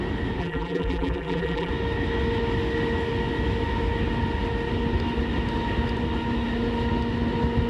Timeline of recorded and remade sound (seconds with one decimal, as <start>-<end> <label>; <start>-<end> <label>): 0.0-0.4 recorded; 0.4-1.7 remade; 1.7-7.7 recorded